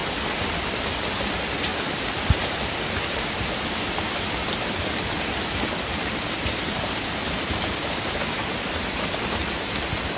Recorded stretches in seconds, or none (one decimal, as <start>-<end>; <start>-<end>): 0.0-10.2

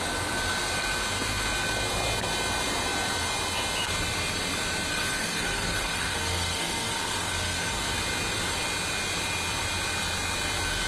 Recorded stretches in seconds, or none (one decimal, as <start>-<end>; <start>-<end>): 0.0-4.9; 7.8-10.9

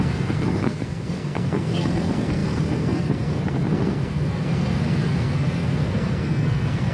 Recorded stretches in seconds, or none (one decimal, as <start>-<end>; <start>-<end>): none

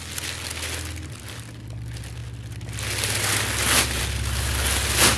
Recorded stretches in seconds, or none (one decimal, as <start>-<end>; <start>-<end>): 0.0-5.2

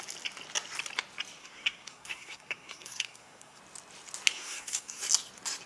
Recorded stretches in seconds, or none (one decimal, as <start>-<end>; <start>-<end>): 0.0-1.4; 3.6-4.3; 5.0-5.7

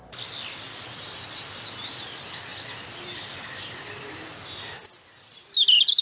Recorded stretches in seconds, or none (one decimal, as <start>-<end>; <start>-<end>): 0.0-6.0

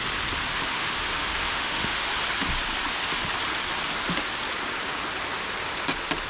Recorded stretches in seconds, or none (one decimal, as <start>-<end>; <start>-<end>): 0.0-0.5; 2.1-6.3